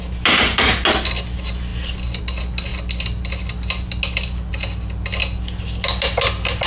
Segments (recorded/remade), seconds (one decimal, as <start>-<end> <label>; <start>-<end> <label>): 0.0-6.7 recorded